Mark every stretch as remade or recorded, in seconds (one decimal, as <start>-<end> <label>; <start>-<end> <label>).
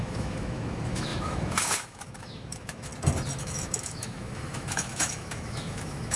0.0-2.9 remade; 2.9-3.4 recorded; 3.4-6.2 remade